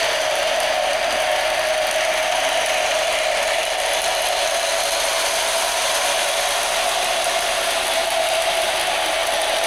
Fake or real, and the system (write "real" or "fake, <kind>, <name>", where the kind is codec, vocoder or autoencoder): real